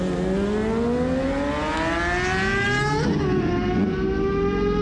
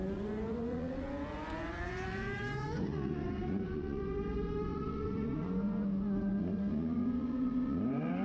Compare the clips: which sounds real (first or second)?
first